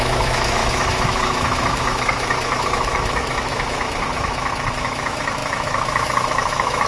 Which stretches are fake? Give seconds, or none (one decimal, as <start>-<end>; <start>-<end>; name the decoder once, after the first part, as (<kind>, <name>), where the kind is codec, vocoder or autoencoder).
0.0-6.9 (autoencoder, DAC-VAE)